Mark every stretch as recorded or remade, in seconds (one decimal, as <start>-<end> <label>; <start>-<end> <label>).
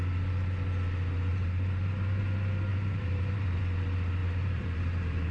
0.0-1.3 recorded; 1.3-2.2 remade; 2.2-2.7 recorded; 2.7-3.6 remade; 3.6-4.2 recorded; 4.2-5.3 remade